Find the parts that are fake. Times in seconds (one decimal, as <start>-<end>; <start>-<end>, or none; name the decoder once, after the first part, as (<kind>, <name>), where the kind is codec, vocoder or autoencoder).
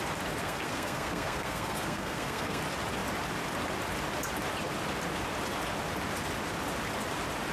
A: 0.4-2.6 (codec, SNAC)